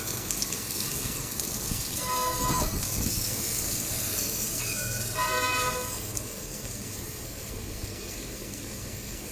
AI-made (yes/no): yes